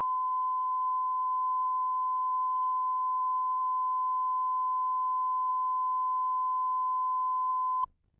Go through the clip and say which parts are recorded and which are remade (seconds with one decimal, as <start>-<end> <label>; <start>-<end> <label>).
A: 0.0-3.6 remade; 3.6-8.2 recorded

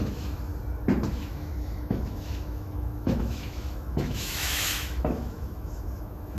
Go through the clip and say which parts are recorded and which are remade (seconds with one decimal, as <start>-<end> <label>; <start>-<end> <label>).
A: 0.0-0.5 remade; 0.5-1.1 recorded; 1.1-6.4 remade

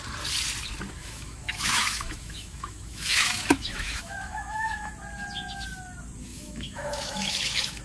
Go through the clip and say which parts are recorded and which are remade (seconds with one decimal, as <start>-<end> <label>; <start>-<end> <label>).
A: 0.0-1.0 recorded; 1.0-4.9 remade; 4.9-6.3 recorded; 6.3-7.8 remade